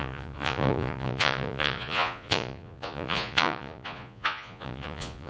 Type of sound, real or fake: fake